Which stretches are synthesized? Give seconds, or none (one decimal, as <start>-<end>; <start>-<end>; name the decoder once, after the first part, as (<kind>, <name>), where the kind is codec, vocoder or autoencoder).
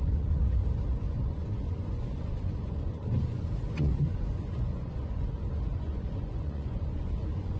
0.0-7.6 (vocoder, Vocos)